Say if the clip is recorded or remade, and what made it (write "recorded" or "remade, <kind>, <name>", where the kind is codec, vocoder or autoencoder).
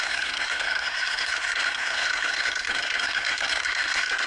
remade, codec, SNAC